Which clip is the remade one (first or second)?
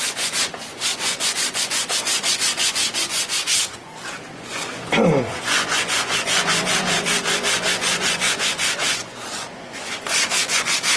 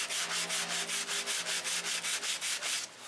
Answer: first